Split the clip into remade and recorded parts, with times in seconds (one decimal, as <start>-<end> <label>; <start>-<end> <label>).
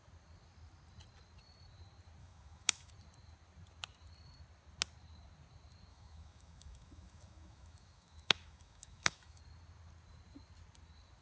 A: 0.0-2.2 recorded; 2.2-2.9 remade; 2.9-5.9 recorded; 5.9-9.4 remade; 9.4-11.2 recorded